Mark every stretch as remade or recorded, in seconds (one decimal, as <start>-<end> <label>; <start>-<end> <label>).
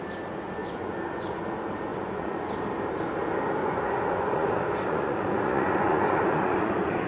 0.0-0.6 recorded; 0.6-1.4 remade; 1.4-1.9 recorded; 1.9-2.5 remade; 2.5-3.6 recorded; 3.6-7.1 remade